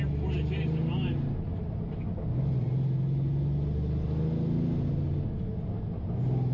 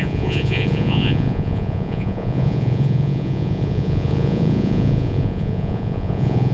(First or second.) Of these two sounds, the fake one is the second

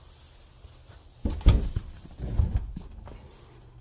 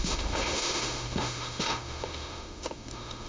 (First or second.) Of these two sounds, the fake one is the second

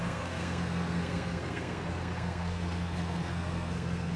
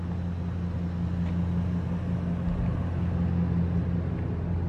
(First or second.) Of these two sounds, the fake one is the first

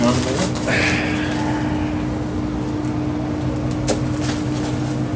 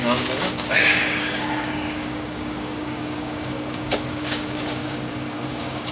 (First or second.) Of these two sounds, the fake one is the second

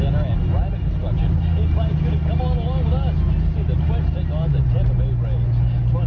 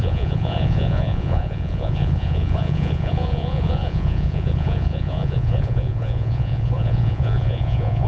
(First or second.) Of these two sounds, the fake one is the second